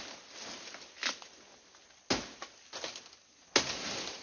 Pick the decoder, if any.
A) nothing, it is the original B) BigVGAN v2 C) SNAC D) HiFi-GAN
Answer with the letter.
A